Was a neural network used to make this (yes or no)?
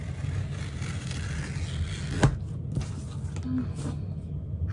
no